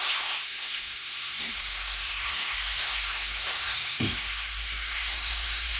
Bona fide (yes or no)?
no